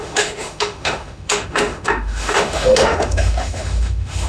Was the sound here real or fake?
fake